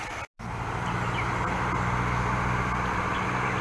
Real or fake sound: real